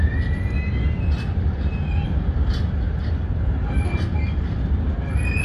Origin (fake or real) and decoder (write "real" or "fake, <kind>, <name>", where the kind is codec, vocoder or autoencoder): real